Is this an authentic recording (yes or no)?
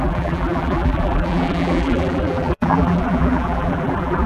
no